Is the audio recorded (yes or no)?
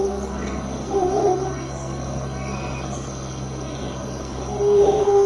no